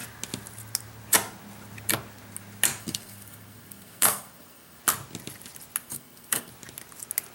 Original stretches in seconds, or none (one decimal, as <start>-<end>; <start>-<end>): 0.0-2.8; 4.8-5.8; 6.5-7.3